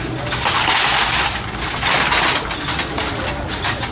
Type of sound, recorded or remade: recorded